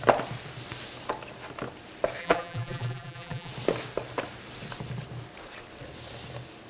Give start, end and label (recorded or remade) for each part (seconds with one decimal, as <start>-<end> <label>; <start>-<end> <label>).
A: 0.0-2.2 recorded; 2.2-3.5 remade; 3.5-6.7 recorded